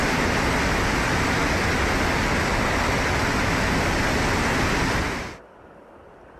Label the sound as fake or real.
real